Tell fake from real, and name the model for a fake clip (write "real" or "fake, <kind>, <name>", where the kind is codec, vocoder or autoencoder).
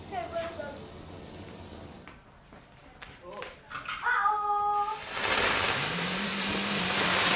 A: real